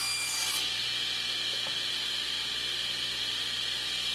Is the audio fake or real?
real